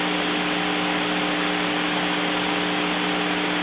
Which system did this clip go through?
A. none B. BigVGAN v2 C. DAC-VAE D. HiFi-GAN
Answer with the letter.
A